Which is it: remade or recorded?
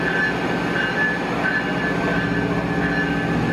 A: recorded